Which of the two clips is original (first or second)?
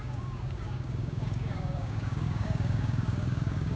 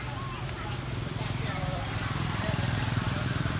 second